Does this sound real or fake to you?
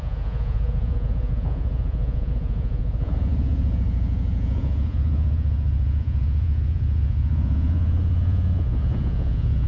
fake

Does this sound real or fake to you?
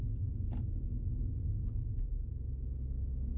real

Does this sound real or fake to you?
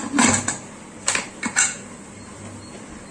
real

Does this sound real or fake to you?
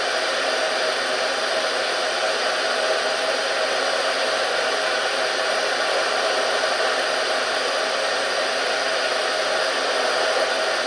real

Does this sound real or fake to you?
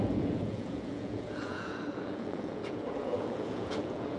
fake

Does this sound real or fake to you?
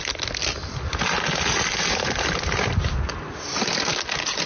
real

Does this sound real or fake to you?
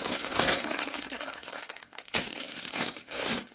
fake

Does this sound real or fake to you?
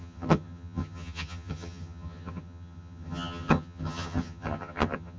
fake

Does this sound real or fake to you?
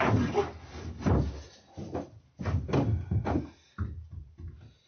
real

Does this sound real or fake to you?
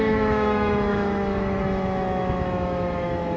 fake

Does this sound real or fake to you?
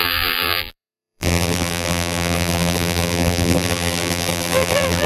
fake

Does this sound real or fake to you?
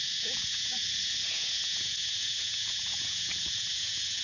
fake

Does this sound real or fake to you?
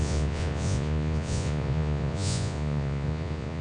fake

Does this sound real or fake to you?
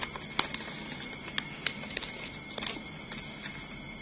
real